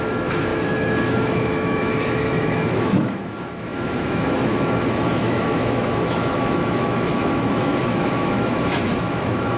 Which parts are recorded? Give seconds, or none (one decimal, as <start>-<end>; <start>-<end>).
none